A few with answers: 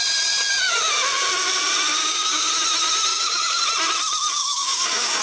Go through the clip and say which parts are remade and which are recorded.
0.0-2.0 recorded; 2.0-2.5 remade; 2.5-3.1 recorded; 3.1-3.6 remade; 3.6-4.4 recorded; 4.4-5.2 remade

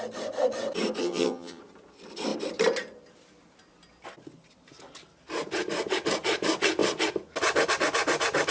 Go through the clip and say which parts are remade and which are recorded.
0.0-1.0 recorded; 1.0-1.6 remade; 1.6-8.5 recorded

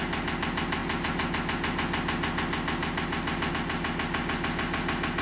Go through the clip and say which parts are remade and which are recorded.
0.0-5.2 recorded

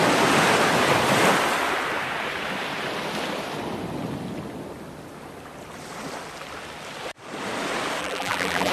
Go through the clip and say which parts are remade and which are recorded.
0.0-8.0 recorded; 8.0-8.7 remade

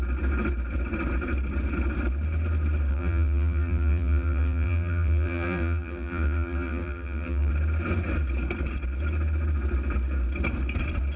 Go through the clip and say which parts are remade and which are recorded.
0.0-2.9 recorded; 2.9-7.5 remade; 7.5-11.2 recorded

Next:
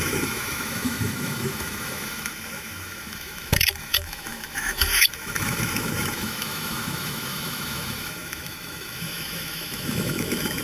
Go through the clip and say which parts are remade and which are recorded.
0.0-10.6 remade

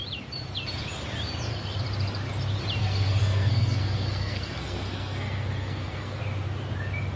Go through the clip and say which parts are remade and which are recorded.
0.0-2.8 recorded; 2.8-6.2 remade; 6.2-7.2 recorded